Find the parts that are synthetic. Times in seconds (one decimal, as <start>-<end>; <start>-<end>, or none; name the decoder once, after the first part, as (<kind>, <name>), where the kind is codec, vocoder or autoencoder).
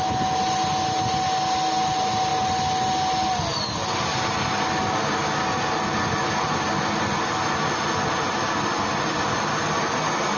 none